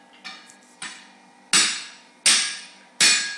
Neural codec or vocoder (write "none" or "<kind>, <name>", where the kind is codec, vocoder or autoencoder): none